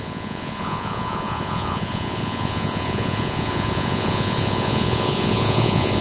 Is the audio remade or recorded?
remade